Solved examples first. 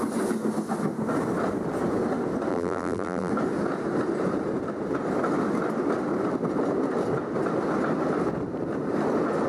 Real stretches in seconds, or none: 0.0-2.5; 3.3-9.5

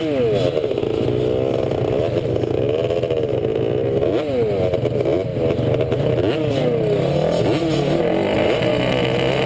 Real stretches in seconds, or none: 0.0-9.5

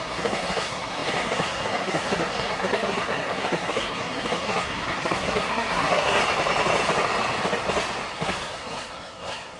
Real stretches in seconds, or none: 6.2-8.1

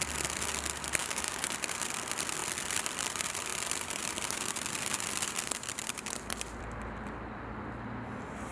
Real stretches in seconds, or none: 0.0-1.0; 1.5-8.5

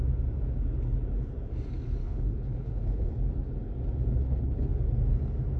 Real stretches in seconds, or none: 0.0-2.0; 3.1-4.1; 4.7-5.6

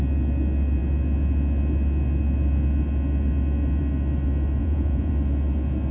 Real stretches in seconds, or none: 0.0-4.6; 5.1-5.9

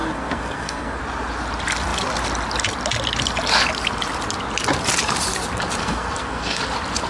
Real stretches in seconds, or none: 1.0-5.8; 6.6-7.1

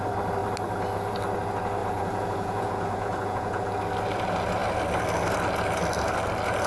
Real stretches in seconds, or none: 0.0-1.8; 3.6-6.7